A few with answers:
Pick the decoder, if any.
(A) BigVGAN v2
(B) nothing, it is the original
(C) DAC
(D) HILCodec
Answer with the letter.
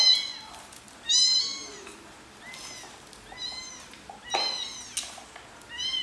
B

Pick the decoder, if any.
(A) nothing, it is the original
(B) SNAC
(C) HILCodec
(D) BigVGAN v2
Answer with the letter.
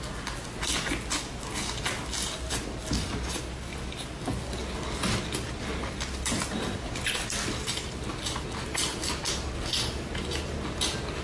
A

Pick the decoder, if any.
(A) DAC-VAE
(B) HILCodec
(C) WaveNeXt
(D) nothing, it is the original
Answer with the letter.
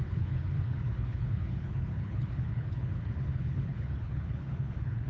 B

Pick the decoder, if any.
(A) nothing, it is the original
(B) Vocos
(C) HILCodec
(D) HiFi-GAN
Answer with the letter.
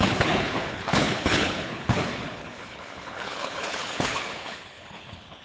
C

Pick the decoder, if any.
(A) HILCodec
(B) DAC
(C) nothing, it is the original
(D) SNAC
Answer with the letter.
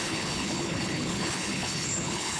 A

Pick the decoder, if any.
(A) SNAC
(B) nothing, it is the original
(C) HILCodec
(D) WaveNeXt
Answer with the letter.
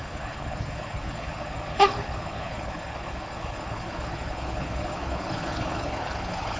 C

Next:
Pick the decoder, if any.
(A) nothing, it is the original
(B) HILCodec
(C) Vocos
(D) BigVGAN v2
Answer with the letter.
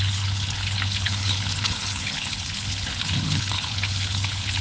B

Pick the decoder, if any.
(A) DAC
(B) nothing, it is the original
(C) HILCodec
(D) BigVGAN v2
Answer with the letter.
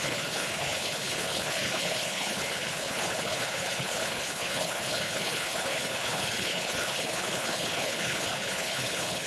C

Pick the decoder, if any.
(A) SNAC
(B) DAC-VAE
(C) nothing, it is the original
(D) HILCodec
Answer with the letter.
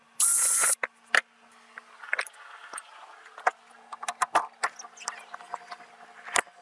C